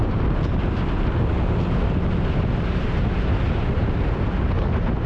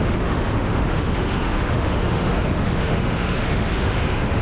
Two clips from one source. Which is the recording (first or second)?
first